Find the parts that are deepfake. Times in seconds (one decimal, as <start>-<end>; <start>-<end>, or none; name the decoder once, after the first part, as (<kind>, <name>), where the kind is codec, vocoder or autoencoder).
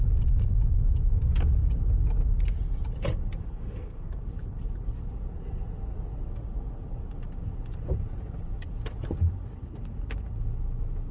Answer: 3.4-4.2 (codec, SNAC)